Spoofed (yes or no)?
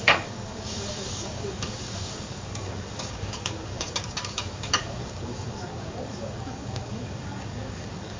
yes